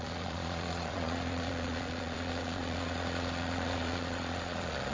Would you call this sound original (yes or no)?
no